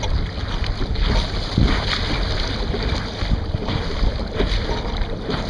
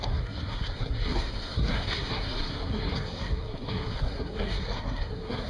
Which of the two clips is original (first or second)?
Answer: first